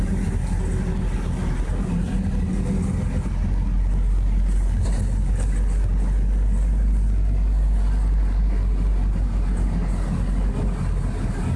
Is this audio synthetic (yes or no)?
no